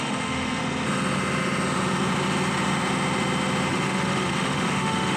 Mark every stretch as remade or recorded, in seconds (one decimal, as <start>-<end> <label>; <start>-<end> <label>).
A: 0.0-0.6 remade; 0.6-3.7 recorded; 3.7-5.2 remade